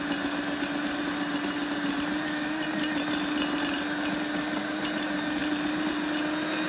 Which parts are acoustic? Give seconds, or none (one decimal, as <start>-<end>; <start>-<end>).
0.0-6.7